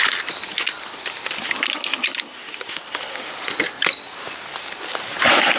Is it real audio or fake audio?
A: real